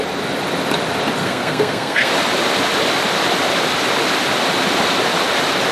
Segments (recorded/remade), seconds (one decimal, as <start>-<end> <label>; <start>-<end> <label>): 0.0-1.2 recorded; 1.2-2.1 remade; 2.1-5.7 recorded